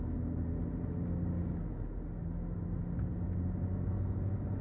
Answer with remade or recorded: recorded